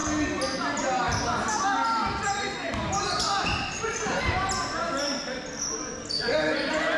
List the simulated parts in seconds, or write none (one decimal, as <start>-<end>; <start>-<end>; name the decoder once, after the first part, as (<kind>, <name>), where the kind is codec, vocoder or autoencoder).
none